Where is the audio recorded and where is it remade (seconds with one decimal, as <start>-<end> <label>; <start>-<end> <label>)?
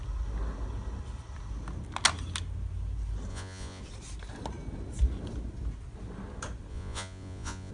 0.0-3.3 recorded; 3.3-3.8 remade; 3.8-6.7 recorded; 6.7-7.7 remade